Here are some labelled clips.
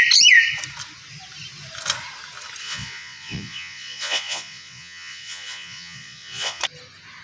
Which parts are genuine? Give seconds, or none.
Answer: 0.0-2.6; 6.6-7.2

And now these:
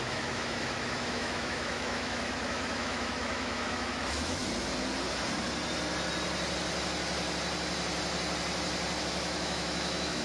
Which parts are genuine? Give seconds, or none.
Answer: 4.4-9.0